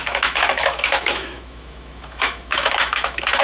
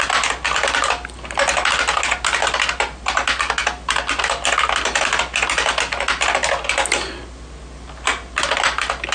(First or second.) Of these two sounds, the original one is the second